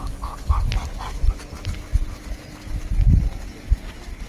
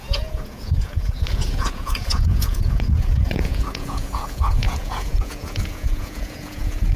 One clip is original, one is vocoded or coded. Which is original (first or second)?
first